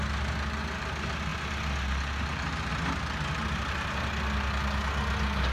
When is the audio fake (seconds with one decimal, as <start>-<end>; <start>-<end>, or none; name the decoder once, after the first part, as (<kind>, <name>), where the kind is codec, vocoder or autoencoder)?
none